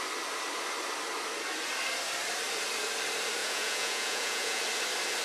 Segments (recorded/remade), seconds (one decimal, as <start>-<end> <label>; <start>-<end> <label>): 0.0-3.4 recorded; 3.4-4.6 remade; 4.6-5.2 recorded